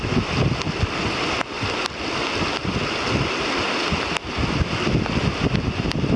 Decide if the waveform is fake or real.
real